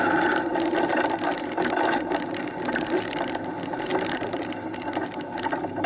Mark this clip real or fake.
real